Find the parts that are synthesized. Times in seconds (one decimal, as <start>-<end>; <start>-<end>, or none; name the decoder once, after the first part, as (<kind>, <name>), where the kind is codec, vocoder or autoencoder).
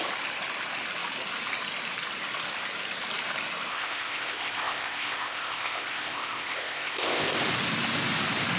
3.7-7.3 (codec, ZipCodec)